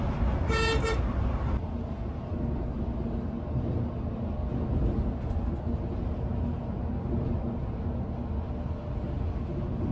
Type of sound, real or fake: real